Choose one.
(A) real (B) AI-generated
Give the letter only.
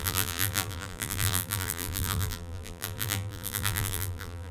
B